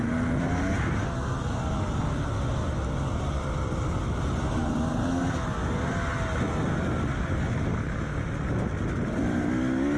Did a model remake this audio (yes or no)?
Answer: no